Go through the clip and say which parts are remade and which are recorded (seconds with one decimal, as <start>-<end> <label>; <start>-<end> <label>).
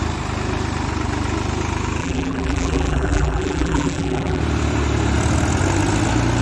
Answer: 0.0-2.0 recorded; 2.0-4.4 remade; 4.4-6.4 recorded